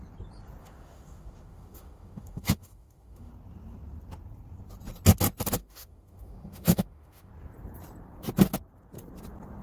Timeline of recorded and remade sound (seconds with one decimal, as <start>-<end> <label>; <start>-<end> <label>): 0.0-0.6 recorded; 0.6-3.3 remade; 3.3-5.6 recorded; 5.6-7.3 remade; 7.3-9.6 recorded